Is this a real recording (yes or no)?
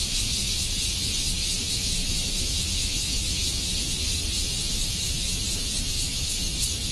no